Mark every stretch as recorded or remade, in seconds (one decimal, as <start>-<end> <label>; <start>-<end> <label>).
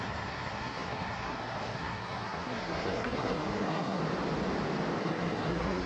0.0-4.0 remade; 4.0-5.0 recorded; 5.0-5.9 remade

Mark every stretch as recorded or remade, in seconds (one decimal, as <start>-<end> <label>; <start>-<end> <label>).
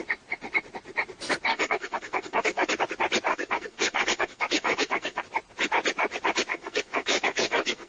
0.0-1.5 recorded; 1.5-2.7 remade; 2.7-3.3 recorded; 3.3-5.2 remade; 5.2-6.5 recorded; 6.5-7.9 remade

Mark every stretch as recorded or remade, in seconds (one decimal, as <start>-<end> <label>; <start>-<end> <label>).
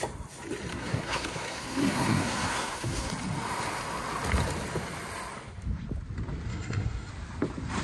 0.0-0.7 recorded; 0.7-3.1 remade; 3.1-6.5 recorded; 6.5-7.1 remade; 7.1-7.8 recorded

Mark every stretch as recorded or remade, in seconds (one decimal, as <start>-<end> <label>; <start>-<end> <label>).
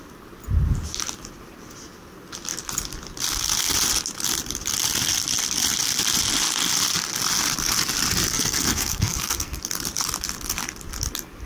0.0-8.3 recorded; 8.3-9.6 remade; 9.6-11.5 recorded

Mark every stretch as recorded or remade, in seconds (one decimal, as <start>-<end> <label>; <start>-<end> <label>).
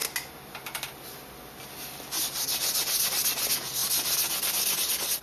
0.0-5.2 recorded